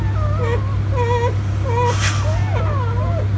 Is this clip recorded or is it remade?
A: recorded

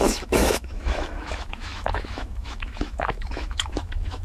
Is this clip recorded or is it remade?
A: remade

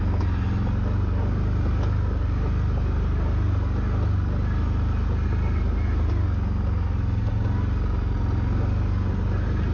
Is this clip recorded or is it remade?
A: recorded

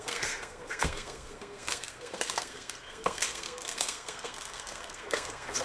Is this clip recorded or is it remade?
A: remade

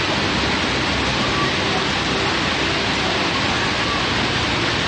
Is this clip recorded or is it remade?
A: recorded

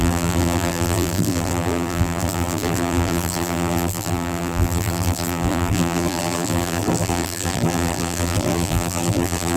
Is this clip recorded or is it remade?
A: remade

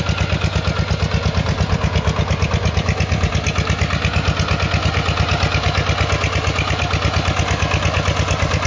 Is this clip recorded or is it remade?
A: recorded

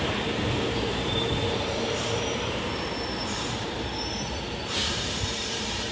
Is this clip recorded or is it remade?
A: remade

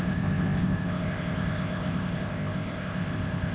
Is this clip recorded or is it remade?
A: remade